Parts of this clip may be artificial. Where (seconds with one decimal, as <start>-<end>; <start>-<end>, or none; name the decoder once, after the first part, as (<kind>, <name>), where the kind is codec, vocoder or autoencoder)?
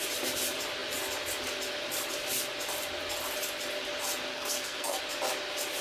4.3-5.0 (codec, SNAC)